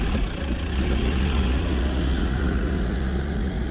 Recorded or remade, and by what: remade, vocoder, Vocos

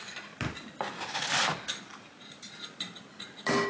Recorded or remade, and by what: recorded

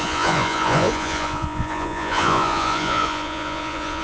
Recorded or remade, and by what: remade, vocoder, Vocos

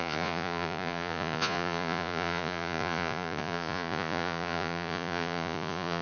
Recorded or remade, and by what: remade, vocoder, Vocos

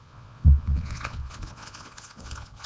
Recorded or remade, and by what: remade, vocoder, Vocos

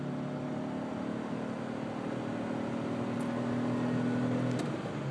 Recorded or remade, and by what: recorded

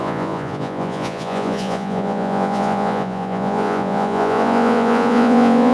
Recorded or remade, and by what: remade, vocoder, Vocos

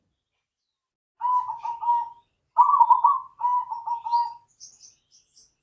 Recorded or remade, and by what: recorded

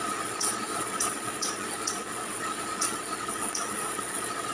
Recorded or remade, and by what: remade, vocoder, Vocos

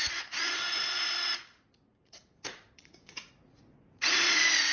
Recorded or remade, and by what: remade, vocoder, Vocos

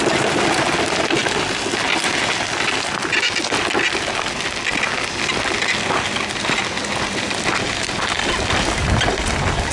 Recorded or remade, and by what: recorded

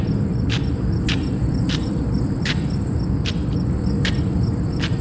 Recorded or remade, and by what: recorded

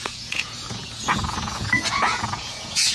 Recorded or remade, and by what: remade, vocoder, Vocos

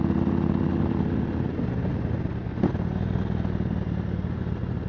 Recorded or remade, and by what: recorded